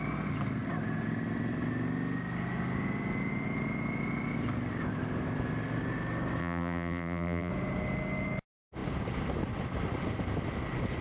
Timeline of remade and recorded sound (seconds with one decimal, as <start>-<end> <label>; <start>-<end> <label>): 0.0-6.4 recorded; 6.4-7.5 remade; 7.5-11.0 recorded